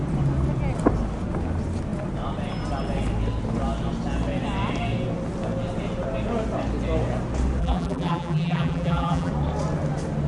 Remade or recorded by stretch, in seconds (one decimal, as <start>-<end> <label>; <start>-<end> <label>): 0.0-7.6 recorded; 7.6-9.3 remade; 9.3-10.3 recorded